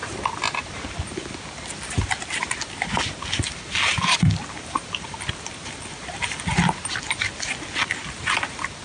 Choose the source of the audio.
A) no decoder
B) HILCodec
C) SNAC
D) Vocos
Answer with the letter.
A